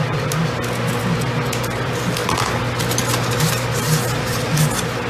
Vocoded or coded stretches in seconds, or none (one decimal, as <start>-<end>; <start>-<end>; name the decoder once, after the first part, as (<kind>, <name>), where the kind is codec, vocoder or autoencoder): none